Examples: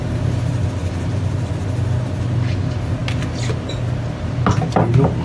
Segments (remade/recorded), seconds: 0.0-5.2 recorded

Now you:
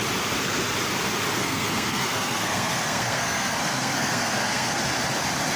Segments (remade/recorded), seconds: 0.0-1.4 recorded; 1.4-4.8 remade; 4.8-5.6 recorded

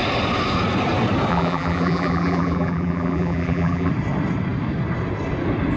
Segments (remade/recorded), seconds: 0.0-1.3 recorded; 1.3-3.9 remade; 3.9-5.8 recorded

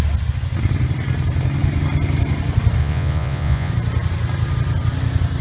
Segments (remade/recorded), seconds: 0.0-2.8 recorded; 2.8-3.7 remade; 3.7-5.4 recorded

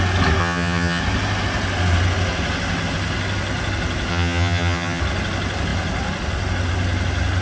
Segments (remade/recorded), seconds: 0.0-0.4 recorded; 0.4-1.0 remade; 1.0-4.1 recorded; 4.1-5.0 remade; 5.0-7.4 recorded

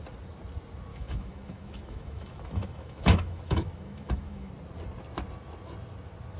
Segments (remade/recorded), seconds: 0.0-0.9 recorded; 0.9-4.5 remade; 4.5-6.4 recorded

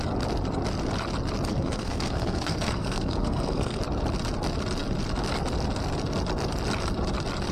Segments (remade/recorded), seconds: 0.0-1.5 recorded; 1.5-3.8 remade; 3.8-7.5 recorded